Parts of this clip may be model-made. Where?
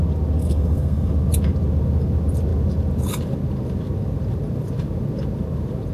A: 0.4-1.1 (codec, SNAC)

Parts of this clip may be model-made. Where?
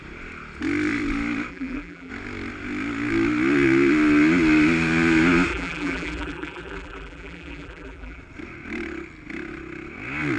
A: 1.5-2.1 (vocoder, BigVGAN v2); 5.5-8.2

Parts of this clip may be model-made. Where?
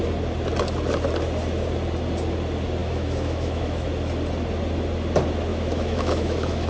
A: 2.8-3.9 (autoencoder, DAC-VAE); 5.5-6.7